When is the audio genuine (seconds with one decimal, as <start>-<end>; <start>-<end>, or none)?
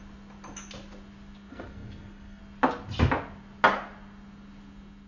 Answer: 0.0-1.5; 2.4-5.1